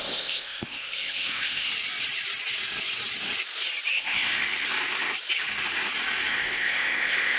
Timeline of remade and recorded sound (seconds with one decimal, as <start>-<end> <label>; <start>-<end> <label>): 0.0-1.7 remade; 1.7-3.9 recorded; 3.9-4.3 remade; 4.3-6.3 recorded; 6.3-7.4 remade